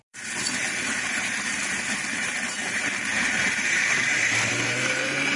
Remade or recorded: remade